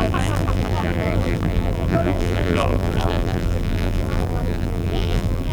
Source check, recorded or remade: remade